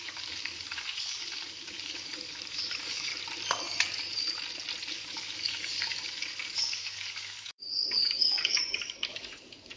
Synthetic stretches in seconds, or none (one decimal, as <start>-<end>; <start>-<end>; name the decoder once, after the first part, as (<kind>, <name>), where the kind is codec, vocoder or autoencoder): 0.0-3.1 (codec, DAC); 4.9-9.8